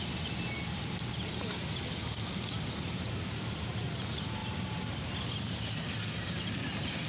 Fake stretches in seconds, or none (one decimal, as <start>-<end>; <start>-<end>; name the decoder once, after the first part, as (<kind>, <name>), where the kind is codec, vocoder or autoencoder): 4.4-4.9 (vocoder, BigVGAN v2)